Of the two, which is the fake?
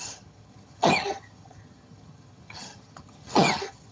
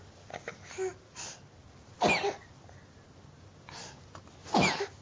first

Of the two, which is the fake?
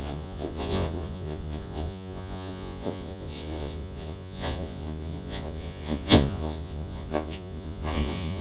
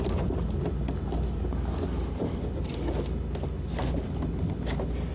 first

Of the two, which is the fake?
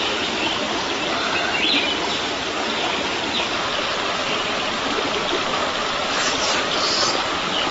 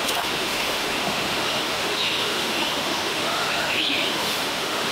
second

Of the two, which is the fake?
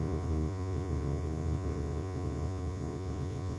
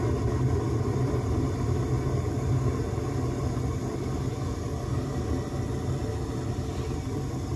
first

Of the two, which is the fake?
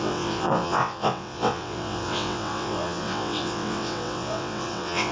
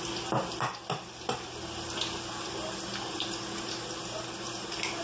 first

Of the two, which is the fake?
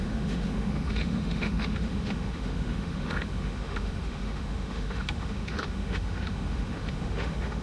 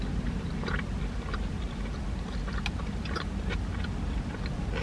first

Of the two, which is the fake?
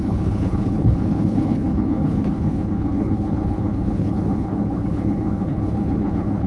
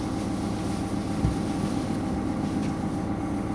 first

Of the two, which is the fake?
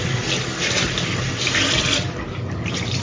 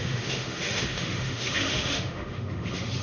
second